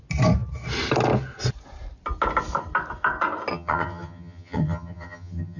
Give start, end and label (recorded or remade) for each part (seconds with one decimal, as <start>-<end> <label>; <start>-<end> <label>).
0.0-3.5 recorded; 3.5-5.6 remade